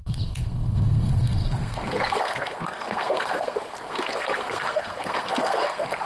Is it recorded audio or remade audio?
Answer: remade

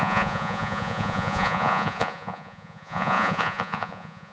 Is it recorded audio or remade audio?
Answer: remade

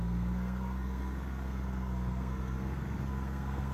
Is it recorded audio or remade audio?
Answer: remade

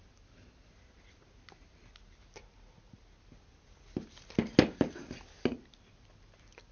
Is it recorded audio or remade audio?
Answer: recorded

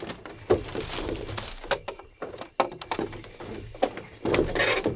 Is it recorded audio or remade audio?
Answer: recorded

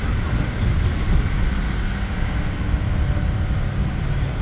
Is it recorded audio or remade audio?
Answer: remade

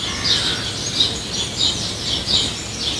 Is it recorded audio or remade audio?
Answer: recorded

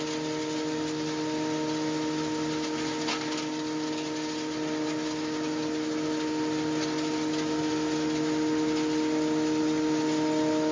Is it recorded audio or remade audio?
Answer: recorded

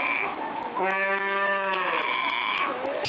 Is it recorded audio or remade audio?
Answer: remade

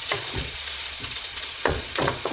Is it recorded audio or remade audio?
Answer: remade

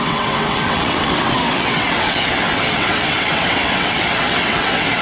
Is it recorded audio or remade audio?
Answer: remade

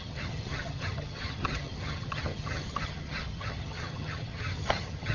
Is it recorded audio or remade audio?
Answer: remade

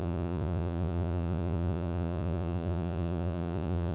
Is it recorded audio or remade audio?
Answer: remade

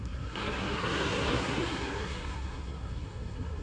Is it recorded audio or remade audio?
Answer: remade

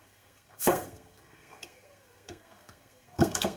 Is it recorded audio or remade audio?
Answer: remade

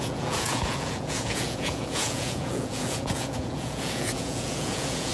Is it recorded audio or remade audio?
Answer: remade